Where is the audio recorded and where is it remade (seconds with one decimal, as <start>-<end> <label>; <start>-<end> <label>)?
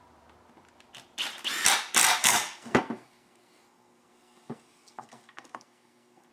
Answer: 0.0-2.2 recorded; 2.2-6.3 remade